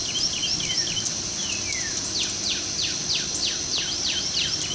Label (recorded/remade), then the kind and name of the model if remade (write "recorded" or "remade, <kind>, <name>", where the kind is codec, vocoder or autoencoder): recorded